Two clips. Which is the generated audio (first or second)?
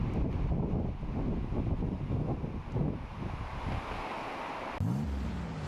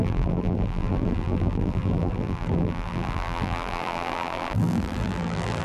second